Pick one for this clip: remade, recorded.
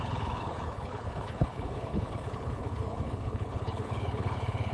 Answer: remade